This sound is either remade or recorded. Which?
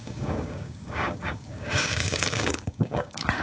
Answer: remade